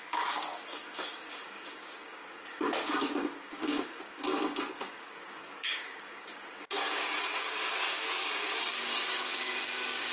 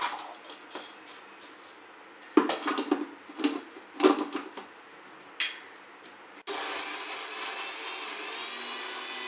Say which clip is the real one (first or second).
second